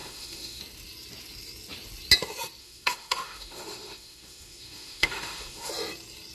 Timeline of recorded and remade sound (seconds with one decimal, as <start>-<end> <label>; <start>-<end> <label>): 0.0-0.6 remade; 0.6-2.6 recorded; 2.6-5.7 remade; 5.7-6.3 recorded

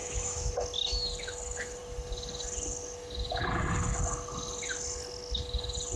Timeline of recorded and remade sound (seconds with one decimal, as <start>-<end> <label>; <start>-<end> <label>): 0.0-0.5 remade; 0.5-6.0 recorded

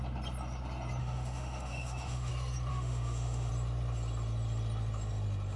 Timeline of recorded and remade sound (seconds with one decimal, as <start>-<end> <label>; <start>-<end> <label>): 0.0-1.0 recorded; 1.0-2.3 remade; 2.3-2.7 recorded; 2.7-3.5 remade; 3.5-5.6 recorded

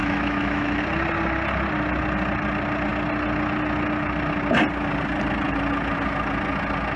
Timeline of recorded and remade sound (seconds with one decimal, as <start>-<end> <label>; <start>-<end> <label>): 0.0-0.8 remade; 0.8-7.0 recorded

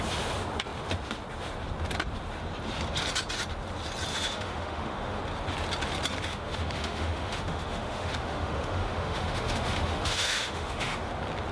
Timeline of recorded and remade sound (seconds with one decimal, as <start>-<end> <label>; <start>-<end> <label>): 0.0-4.1 recorded; 4.1-5.2 remade; 5.2-6.3 recorded; 6.3-11.1 remade; 11.1-11.5 recorded

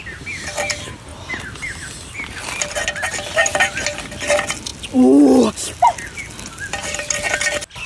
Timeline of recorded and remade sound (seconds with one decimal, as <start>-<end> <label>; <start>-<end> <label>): 0.0-7.9 recorded

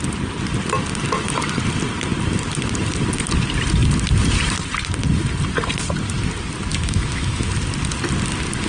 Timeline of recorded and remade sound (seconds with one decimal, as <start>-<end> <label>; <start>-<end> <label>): 0.0-6.7 recorded; 6.7-7.5 remade; 7.5-8.7 recorded